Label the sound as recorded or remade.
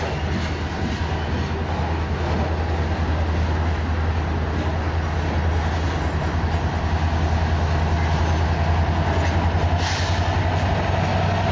recorded